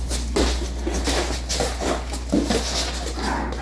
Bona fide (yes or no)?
yes